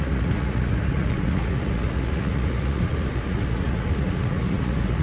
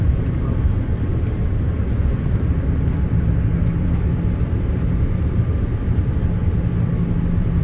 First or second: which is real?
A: second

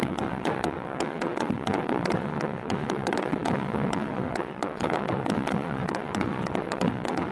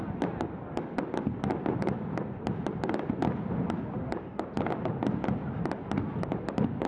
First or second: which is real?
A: second